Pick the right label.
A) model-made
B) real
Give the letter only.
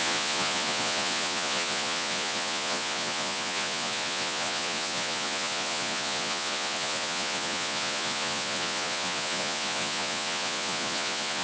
A